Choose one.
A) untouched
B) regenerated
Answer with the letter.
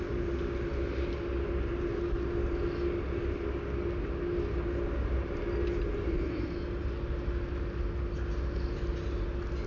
A